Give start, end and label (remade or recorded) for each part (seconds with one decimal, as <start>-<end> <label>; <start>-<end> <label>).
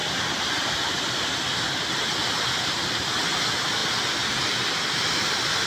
0.0-5.7 recorded